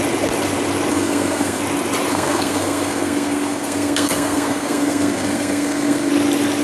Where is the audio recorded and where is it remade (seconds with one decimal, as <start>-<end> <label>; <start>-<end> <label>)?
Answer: 0.0-0.9 recorded; 0.9-1.6 remade; 1.6-2.1 recorded; 2.1-6.1 remade; 6.1-6.6 recorded